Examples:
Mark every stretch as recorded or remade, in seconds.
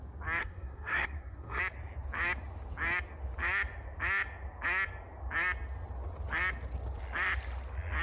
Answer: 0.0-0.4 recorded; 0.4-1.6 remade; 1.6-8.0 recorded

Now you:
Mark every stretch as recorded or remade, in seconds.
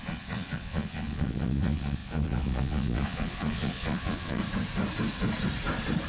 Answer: 0.0-4.4 remade; 4.4-6.1 recorded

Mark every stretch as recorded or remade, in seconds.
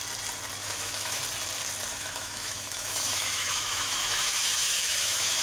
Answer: 0.0-0.6 recorded; 0.6-1.2 remade; 1.2-1.9 recorded; 1.9-5.4 remade